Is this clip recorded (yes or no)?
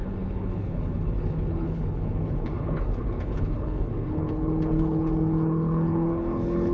no